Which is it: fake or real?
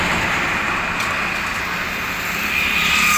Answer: real